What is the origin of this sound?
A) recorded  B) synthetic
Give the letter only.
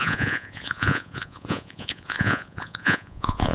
B